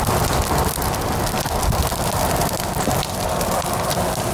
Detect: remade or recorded recorded